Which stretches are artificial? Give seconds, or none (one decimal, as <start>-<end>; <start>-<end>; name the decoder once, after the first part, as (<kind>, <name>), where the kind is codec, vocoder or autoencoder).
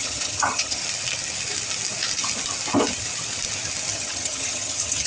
0.0-0.8 (vocoder, HiFi-GAN); 3.9-5.1